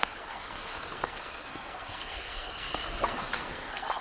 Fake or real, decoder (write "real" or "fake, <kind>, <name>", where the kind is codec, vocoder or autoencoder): fake, codec, SNAC